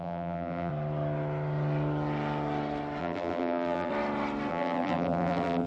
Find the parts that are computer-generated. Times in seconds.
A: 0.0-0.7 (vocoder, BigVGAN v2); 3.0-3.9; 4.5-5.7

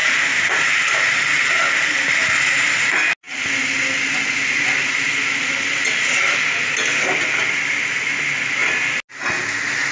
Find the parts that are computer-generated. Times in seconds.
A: 0.0-1.1 (vocoder, BigVGAN v2)

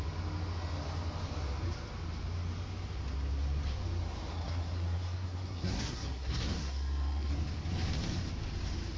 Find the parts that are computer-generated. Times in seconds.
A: 4.3-7.3 (codec, SNAC)

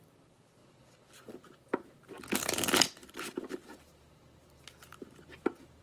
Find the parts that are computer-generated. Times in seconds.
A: none

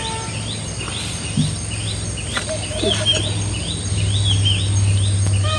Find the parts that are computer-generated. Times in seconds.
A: none